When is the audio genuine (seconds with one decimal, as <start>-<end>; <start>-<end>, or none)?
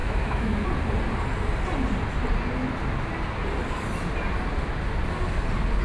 0.7-5.8